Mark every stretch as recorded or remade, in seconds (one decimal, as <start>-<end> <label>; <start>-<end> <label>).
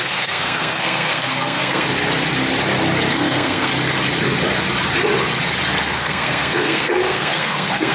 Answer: 0.0-1.9 remade; 1.9-3.1 recorded; 3.1-3.7 remade; 3.7-5.8 recorded; 5.8-7.9 remade